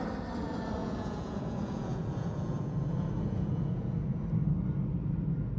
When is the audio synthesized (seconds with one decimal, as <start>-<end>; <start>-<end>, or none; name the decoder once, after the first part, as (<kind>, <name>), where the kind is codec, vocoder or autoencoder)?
0.8-4.2 (vocoder, Vocos)